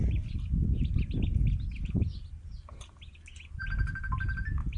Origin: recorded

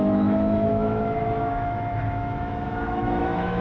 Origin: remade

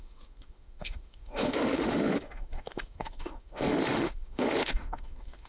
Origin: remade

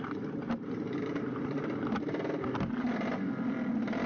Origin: recorded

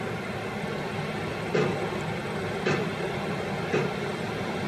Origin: recorded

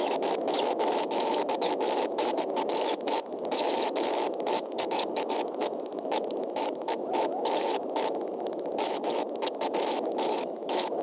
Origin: remade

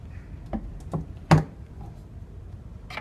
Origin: recorded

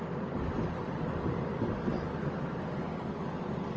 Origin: recorded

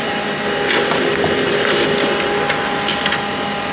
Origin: recorded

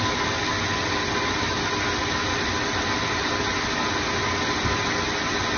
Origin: recorded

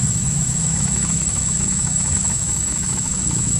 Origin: remade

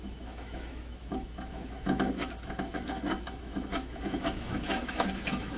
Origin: remade